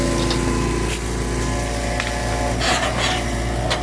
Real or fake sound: real